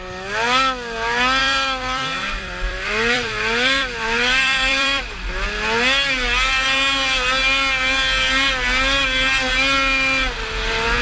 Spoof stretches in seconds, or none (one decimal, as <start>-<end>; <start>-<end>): 1.4-5.0